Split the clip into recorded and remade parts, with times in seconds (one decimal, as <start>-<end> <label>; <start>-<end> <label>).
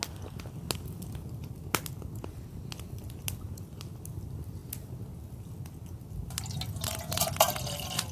0.0-8.1 recorded